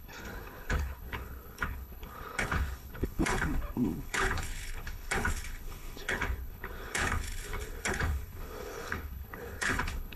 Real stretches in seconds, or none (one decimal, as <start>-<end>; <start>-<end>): none